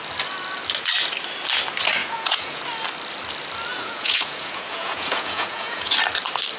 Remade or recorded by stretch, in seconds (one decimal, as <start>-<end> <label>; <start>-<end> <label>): 0.0-2.0 recorded; 2.0-2.6 remade; 2.6-3.7 recorded; 3.7-5.9 remade; 5.9-6.6 recorded